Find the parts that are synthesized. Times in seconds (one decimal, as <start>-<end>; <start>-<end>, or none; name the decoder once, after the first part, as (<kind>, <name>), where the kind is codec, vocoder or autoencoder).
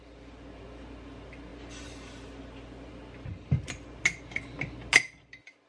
none